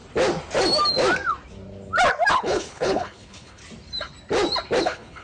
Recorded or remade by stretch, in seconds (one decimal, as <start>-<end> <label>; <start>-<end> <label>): 0.0-2.3 recorded; 2.3-3.6 remade; 3.6-4.8 recorded; 4.8-5.2 remade

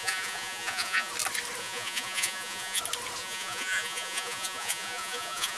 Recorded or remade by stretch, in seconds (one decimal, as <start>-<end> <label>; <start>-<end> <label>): 0.0-1.1 remade; 1.1-1.6 recorded; 1.6-2.8 remade; 2.8-3.2 recorded; 3.2-5.6 remade